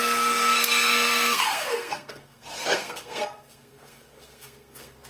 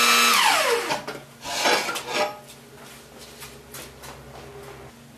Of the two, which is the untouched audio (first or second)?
second